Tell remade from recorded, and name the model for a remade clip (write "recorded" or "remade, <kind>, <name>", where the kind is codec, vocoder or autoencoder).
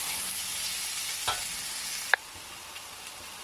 recorded